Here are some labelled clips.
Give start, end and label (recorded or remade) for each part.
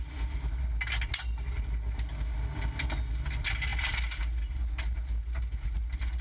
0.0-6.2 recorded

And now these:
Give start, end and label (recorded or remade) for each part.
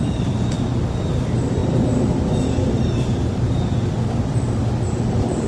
0.0-5.5 recorded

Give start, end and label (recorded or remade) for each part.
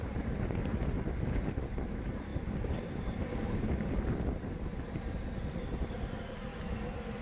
0.0-6.5 remade; 6.5-7.2 recorded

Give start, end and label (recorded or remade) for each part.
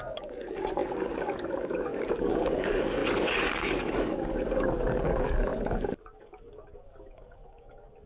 0.0-8.1 remade